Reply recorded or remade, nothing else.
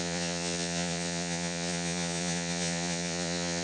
remade